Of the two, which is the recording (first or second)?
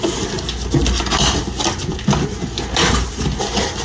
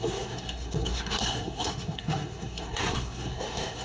first